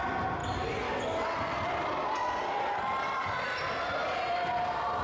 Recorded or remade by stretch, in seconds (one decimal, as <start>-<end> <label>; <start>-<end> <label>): 0.0-5.0 recorded